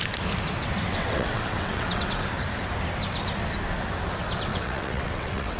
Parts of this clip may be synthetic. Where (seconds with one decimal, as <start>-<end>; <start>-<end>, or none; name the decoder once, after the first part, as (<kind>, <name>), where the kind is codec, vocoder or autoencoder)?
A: 0.9-2.2 (vocoder, WaveNeXt); 4.5-5.6